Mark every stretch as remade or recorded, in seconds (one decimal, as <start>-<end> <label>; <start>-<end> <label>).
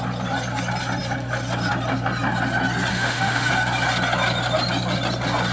0.0-2.9 recorded; 2.9-3.5 remade; 3.5-5.5 recorded